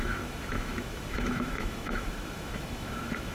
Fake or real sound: fake